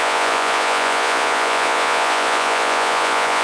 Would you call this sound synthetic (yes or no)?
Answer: yes